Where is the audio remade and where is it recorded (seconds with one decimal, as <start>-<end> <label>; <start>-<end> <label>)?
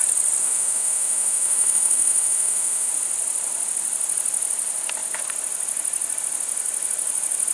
0.0-0.4 recorded; 0.4-2.9 remade; 2.9-7.5 recorded